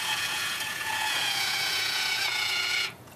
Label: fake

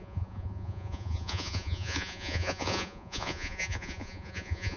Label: fake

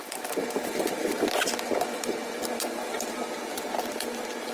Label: real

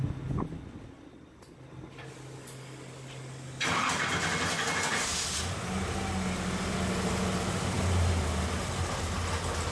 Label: real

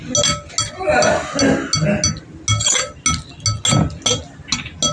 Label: real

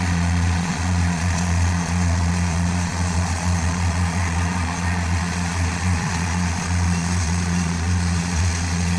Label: fake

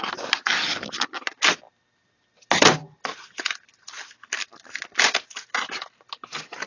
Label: real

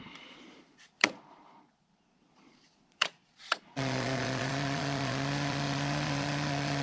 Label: fake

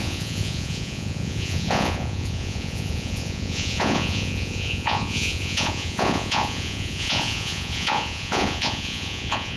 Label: fake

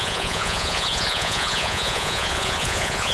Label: fake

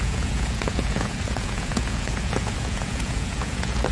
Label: fake